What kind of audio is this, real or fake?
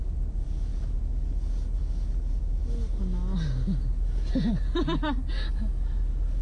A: real